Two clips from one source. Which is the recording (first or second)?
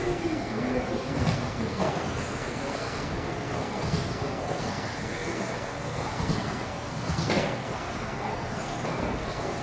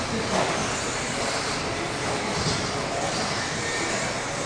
second